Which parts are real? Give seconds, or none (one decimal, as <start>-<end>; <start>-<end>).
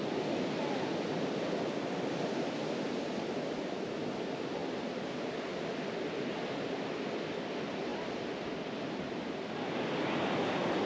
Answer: 0.0-10.9